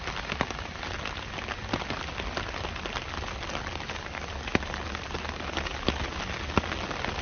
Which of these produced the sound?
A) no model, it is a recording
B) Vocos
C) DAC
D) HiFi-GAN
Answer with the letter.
A